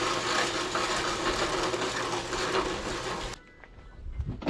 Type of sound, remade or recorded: recorded